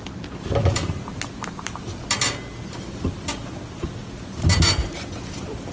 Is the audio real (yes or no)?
yes